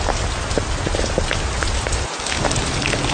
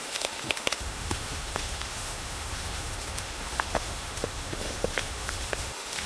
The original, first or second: first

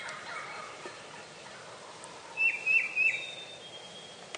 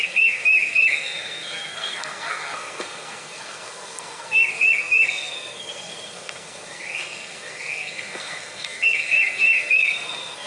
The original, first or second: first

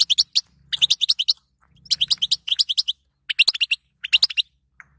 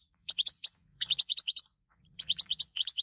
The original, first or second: first